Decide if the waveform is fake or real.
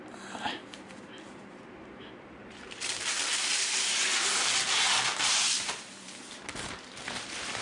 fake